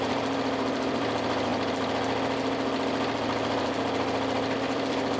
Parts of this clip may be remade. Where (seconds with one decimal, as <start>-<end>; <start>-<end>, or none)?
0.0-1.5; 4.6-5.2